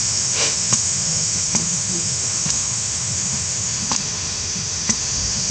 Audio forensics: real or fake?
fake